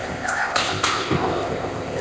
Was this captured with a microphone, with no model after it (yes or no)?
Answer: no